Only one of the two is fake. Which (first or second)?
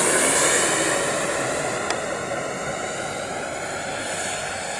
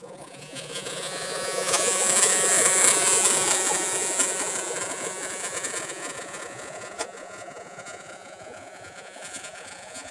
second